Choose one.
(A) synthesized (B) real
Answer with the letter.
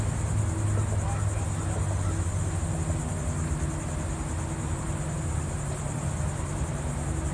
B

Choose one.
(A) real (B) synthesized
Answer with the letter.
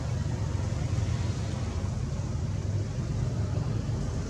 A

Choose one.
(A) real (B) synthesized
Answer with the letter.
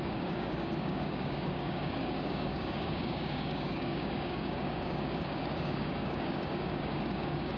B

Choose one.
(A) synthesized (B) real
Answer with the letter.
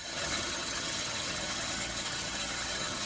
A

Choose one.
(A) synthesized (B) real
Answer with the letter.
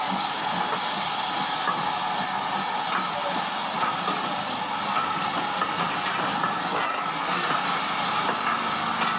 B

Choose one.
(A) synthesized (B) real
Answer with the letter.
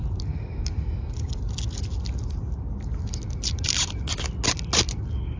B